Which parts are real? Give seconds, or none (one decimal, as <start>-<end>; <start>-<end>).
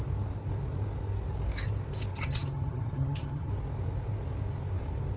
0.0-2.1; 3.5-5.2